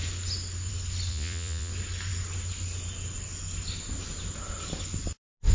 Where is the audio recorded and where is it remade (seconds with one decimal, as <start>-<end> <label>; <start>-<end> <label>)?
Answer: 0.0-1.1 recorded; 1.1-1.7 remade; 1.7-5.5 recorded